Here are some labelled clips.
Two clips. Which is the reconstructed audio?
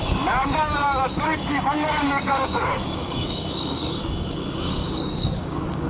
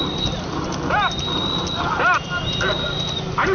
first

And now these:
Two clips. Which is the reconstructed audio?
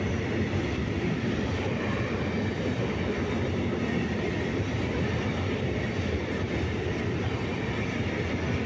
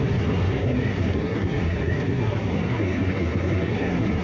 second